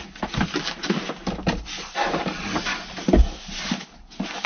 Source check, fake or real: real